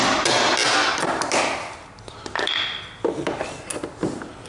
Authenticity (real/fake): real